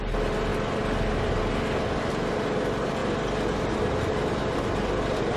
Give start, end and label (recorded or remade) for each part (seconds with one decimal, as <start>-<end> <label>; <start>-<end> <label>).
0.0-5.4 recorded